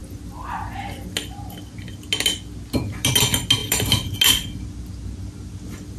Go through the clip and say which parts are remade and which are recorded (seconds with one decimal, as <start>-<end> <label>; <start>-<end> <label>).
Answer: 0.0-6.0 recorded